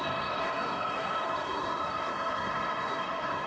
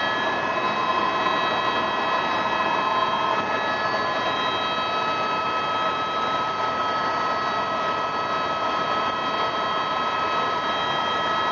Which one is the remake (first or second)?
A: first